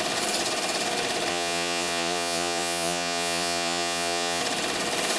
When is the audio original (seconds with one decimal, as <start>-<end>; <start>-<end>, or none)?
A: 0.0-1.3; 4.4-5.2